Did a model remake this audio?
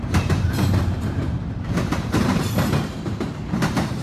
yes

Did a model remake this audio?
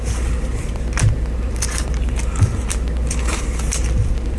yes